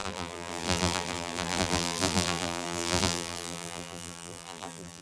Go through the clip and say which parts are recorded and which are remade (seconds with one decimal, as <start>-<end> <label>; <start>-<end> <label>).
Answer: 0.0-5.0 remade

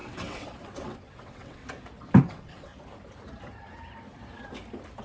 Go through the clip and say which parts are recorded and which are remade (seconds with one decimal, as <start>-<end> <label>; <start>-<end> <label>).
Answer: 0.0-1.6 remade; 1.6-2.2 recorded; 2.2-2.7 remade; 2.7-5.0 recorded

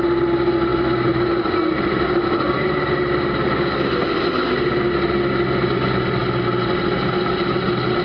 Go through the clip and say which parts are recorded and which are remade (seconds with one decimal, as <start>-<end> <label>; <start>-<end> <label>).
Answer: 0.0-8.0 recorded